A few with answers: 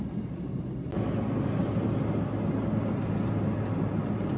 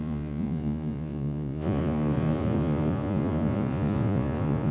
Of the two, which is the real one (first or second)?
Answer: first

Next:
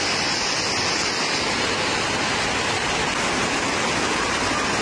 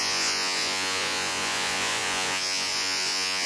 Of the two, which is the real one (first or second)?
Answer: first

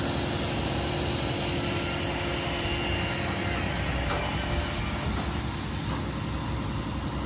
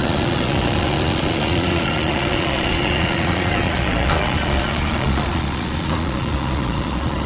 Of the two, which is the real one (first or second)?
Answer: first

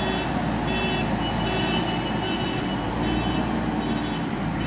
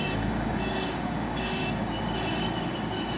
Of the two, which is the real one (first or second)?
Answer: first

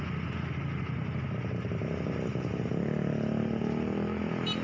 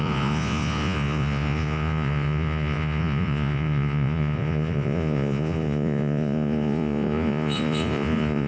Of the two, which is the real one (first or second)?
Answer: first